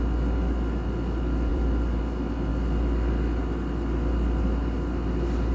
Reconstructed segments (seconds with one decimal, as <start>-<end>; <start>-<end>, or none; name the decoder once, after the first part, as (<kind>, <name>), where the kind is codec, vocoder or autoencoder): 1.5-2.0 (vocoder, BigVGAN v2)